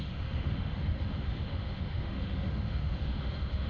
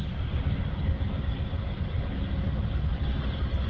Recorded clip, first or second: second